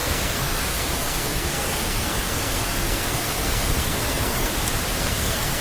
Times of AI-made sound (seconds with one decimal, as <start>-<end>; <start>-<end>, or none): 0.0-4.5; 5.0-5.6